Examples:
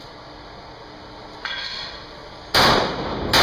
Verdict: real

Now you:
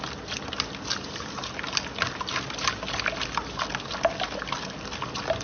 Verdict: real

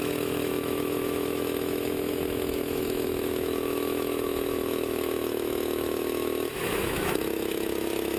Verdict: fake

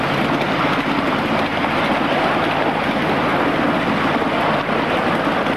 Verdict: real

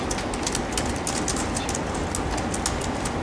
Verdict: real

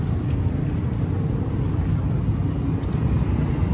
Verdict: real